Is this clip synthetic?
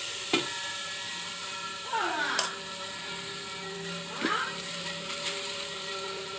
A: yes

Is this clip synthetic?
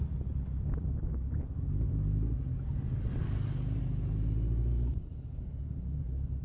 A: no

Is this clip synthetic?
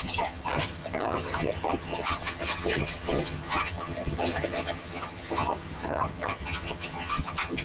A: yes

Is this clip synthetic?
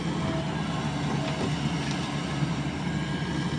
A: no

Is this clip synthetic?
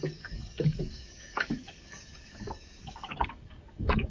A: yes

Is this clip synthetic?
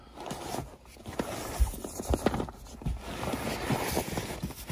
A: no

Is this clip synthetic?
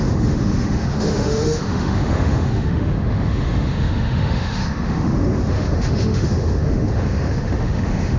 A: yes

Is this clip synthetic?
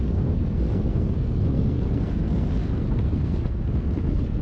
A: yes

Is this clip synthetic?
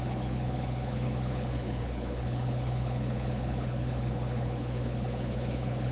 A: yes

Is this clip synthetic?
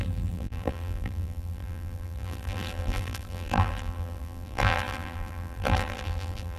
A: yes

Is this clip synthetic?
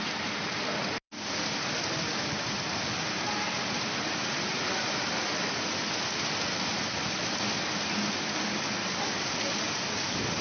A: no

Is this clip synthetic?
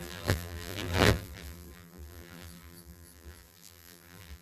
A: yes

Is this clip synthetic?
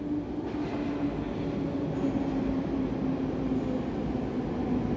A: no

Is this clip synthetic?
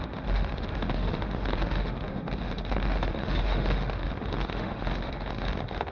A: yes